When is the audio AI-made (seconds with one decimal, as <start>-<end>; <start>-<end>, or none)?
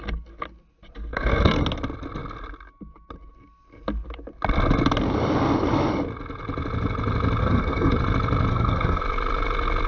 1.1-1.6; 7.4-7.9; 8.5-9.0